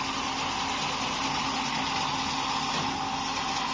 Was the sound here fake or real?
real